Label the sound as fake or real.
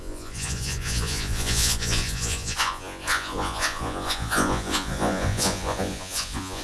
fake